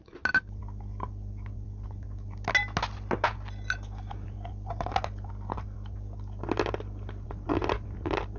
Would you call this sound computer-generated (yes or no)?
no